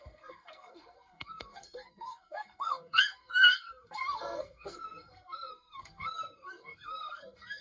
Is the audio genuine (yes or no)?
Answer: no